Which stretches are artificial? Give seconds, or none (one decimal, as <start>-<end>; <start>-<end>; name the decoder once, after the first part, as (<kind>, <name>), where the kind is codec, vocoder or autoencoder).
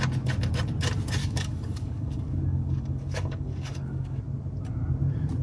1.2-4.2 (codec, DAC)